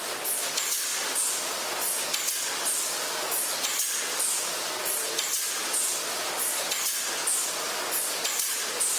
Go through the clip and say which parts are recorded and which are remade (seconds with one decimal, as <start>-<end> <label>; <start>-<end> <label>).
0.0-9.0 recorded